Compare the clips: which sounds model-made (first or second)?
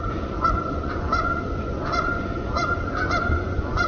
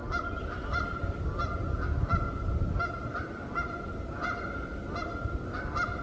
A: first